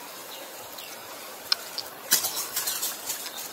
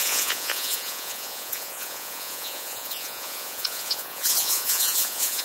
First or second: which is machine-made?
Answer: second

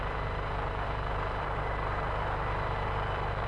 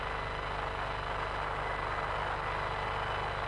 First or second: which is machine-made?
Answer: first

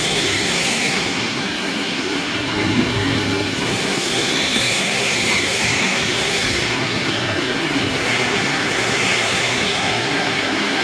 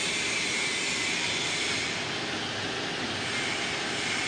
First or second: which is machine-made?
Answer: first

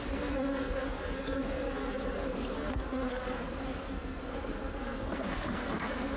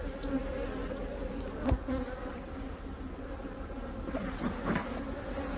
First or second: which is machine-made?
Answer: first